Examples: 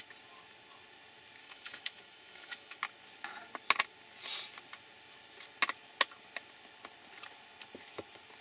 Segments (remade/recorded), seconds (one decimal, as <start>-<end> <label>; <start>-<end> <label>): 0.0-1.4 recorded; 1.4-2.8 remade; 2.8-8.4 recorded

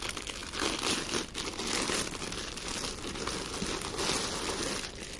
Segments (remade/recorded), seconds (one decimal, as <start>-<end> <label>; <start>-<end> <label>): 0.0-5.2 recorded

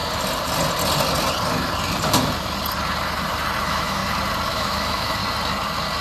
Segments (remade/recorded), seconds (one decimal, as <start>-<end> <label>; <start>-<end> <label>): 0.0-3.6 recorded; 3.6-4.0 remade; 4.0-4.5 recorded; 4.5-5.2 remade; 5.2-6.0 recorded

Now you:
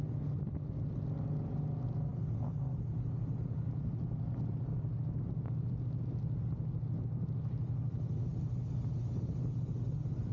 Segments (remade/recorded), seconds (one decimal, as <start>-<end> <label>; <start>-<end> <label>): 0.0-10.3 recorded